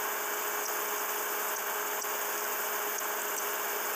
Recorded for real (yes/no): yes